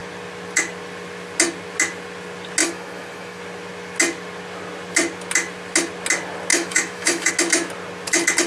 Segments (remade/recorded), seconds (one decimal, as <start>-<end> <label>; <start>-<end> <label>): 0.0-2.6 recorded; 2.6-3.4 remade; 3.4-6.5 recorded; 6.5-7.3 remade; 7.3-8.5 recorded